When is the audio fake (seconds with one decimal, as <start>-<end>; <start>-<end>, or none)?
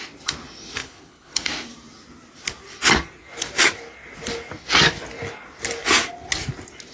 0.8-1.5